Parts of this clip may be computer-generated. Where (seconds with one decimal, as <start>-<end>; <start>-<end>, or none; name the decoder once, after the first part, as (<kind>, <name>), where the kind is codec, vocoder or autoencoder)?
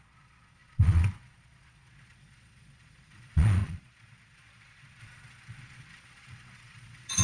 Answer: 0.0-7.2 (vocoder, Vocos)